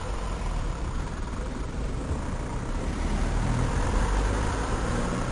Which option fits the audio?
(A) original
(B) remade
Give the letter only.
B